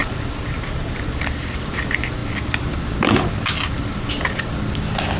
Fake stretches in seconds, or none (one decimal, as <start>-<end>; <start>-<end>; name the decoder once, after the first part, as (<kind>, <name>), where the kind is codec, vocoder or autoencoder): 0.0-1.1 (vocoder, BigVGAN v2)